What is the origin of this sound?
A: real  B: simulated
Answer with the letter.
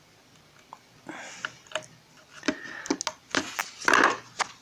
A